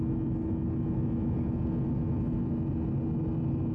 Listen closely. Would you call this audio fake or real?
real